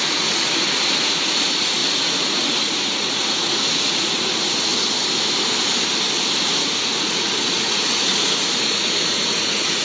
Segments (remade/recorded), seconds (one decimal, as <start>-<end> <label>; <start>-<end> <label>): 0.0-4.7 remade; 4.7-6.4 recorded; 6.4-9.8 remade

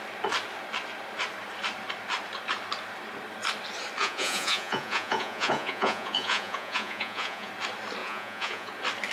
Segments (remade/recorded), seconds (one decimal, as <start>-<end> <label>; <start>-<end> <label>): 0.0-4.0 recorded; 4.0-7.5 remade; 7.5-8.0 recorded; 8.0-8.7 remade; 8.7-9.1 recorded

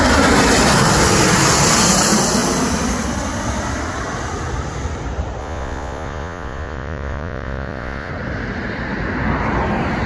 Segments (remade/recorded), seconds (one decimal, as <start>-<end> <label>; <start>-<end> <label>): 0.0-5.4 recorded; 5.4-8.1 remade; 8.1-10.1 recorded

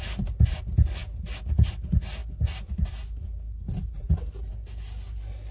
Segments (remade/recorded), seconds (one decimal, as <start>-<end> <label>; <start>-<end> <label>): 0.0-5.5 recorded

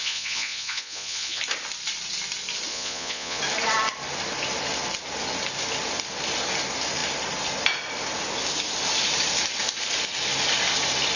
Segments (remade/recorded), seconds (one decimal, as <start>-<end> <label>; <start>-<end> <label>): 0.0-1.4 remade; 1.4-2.7 recorded; 2.7-3.4 remade; 3.4-11.2 recorded

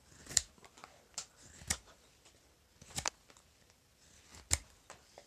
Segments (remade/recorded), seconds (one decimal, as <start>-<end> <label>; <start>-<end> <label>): 0.0-5.3 recorded

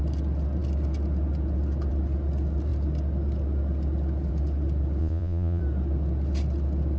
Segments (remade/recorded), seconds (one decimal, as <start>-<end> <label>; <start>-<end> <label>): 0.0-5.0 recorded; 5.0-5.6 remade; 5.6-7.0 recorded